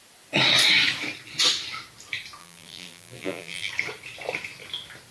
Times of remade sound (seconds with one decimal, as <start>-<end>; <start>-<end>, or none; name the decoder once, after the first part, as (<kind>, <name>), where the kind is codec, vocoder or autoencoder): 2.4-3.7 (vocoder, BigVGAN v2)